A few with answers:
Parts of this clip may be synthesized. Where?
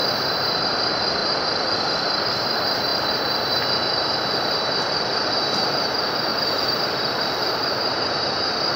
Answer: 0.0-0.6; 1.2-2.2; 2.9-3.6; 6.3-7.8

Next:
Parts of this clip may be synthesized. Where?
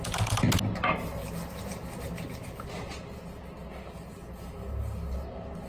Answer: none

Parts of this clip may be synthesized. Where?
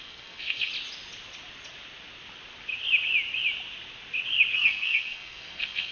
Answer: 0.0-0.7; 4.5-5.9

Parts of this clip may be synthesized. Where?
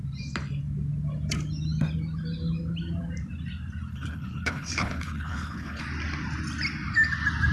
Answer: 3.9-5.8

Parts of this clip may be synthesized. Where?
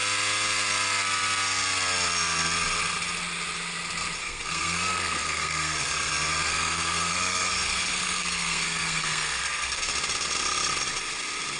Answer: 4.2-6.1; 6.5-9.9